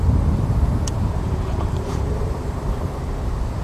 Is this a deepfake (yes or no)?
yes